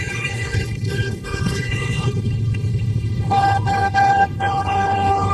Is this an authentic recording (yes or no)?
no